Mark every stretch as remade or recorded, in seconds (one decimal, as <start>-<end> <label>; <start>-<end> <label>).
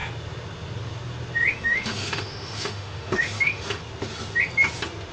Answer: 0.0-1.5 recorded; 1.5-3.8 remade; 3.8-5.1 recorded